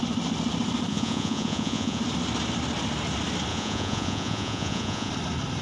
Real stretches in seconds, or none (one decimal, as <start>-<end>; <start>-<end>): 0.0-0.9; 2.0-3.5; 5.1-5.6

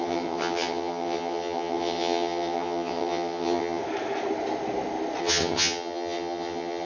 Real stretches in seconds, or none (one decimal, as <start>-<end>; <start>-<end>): 3.8-5.2

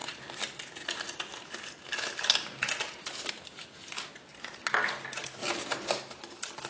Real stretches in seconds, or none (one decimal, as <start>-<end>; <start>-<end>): 0.0-6.7

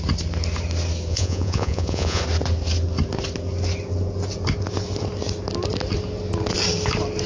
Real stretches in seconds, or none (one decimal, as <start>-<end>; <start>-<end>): 0.0-1.1; 2.2-7.3

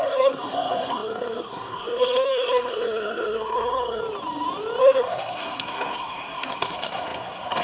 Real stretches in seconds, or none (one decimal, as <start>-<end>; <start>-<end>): 4.0-4.8